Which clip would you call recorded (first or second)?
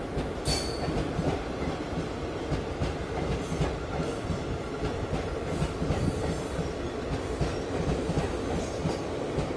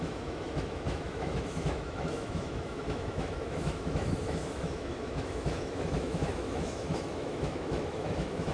first